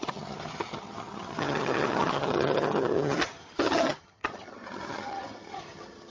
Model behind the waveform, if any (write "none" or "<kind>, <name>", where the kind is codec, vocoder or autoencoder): vocoder, HiFi-GAN